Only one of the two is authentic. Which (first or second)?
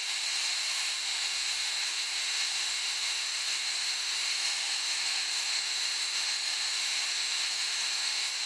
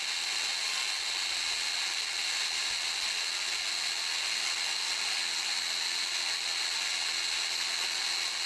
second